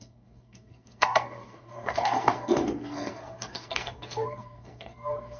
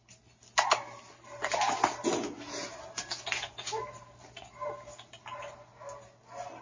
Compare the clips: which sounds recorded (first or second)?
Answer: second